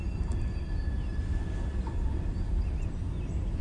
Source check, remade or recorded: recorded